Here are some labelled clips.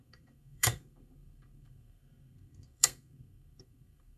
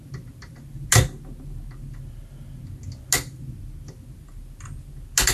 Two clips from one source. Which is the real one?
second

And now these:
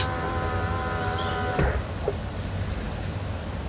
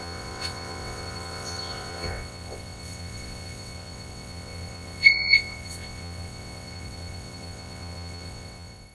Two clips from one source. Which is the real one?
first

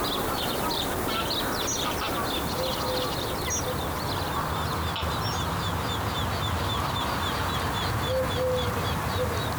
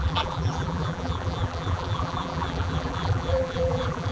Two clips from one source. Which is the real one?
first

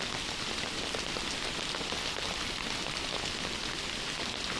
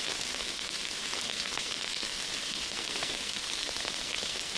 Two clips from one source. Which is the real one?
first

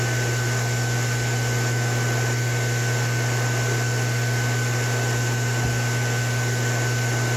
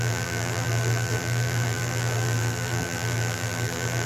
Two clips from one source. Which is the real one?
first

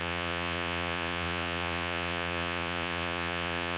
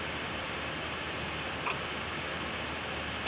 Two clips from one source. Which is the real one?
second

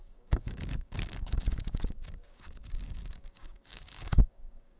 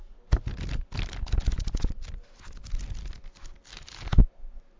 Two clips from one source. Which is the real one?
second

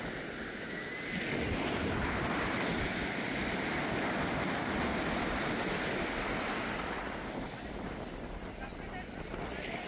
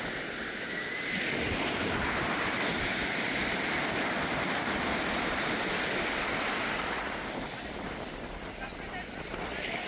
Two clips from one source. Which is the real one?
first